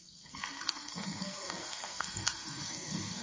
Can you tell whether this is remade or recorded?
remade